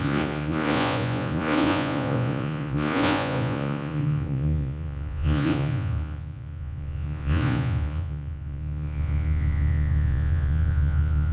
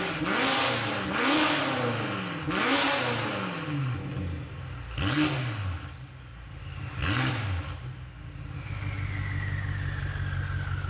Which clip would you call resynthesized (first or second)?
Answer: first